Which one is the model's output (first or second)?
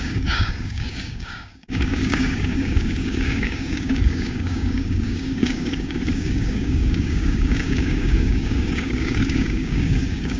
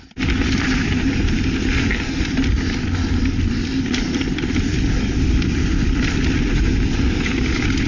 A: first